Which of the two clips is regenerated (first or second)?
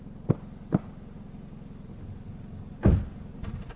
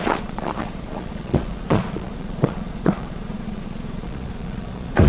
second